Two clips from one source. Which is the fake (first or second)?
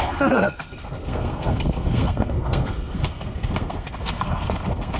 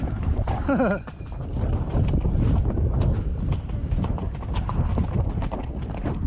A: first